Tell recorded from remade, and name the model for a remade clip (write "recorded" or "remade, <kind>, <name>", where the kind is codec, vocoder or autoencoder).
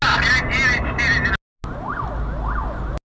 recorded